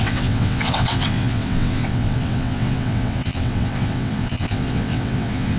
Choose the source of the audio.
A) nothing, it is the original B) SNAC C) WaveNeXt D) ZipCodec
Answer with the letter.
C